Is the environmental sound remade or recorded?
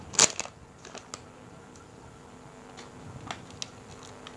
recorded